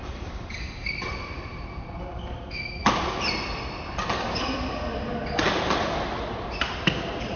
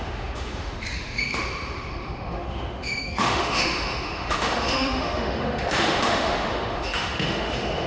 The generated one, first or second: second